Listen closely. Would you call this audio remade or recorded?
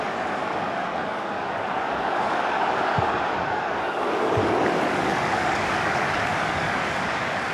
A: remade